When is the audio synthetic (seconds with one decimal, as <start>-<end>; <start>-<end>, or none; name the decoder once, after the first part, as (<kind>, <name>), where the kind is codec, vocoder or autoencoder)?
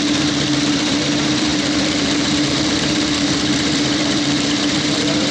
0.0-5.3 (vocoder, BigVGAN v2)